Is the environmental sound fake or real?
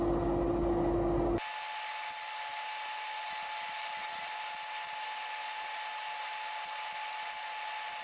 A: real